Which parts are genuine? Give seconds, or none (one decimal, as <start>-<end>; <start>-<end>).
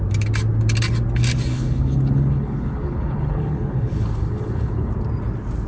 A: 0.0-1.5; 4.9-5.7